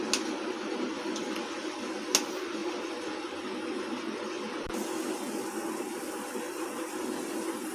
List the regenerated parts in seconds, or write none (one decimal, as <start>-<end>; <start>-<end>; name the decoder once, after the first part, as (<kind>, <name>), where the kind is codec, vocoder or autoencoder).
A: none